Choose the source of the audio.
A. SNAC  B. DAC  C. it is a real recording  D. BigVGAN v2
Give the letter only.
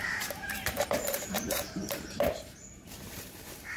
D